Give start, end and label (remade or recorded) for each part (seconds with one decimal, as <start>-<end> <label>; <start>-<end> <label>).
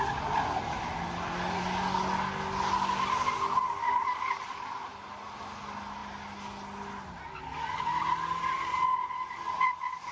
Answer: 0.0-10.1 recorded